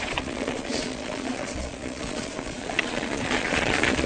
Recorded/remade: remade